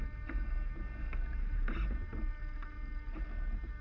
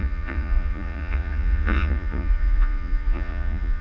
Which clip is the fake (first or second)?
second